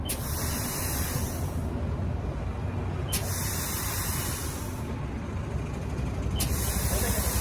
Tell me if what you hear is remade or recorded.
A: recorded